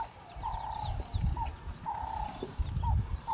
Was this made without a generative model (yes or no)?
yes